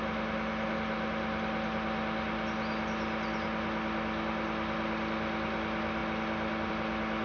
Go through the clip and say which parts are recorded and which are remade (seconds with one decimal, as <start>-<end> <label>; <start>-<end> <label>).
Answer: 0.0-7.2 recorded